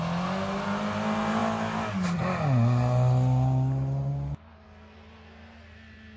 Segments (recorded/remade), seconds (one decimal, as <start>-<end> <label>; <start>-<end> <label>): 0.0-6.2 recorded

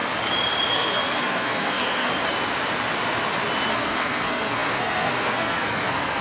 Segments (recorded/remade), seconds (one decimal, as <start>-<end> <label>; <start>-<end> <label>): 0.0-0.7 recorded; 0.7-2.1 remade; 2.1-3.7 recorded; 3.7-6.2 remade

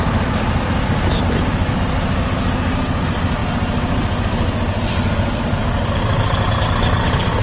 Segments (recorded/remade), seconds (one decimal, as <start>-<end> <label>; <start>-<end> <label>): 0.0-7.4 recorded

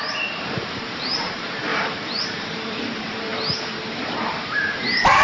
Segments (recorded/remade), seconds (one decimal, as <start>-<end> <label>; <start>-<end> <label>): 0.0-3.3 remade; 3.3-4.0 recorded; 4.0-5.2 remade

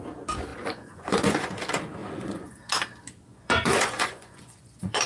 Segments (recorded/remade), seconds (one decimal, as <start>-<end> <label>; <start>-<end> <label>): 0.0-0.5 recorded; 0.5-1.5 remade; 1.5-2.0 recorded; 2.0-2.6 remade; 2.6-3.3 recorded; 3.3-5.1 remade

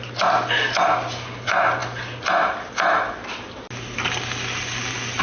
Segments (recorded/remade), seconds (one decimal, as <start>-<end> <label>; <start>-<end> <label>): 0.0-5.2 recorded

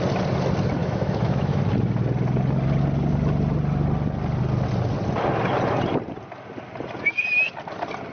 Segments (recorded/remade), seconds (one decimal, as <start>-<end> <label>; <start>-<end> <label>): 0.0-0.8 recorded; 0.8-1.6 remade; 1.6-8.1 recorded

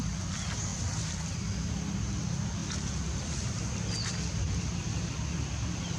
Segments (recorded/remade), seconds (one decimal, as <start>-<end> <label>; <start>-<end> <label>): 0.0-6.0 remade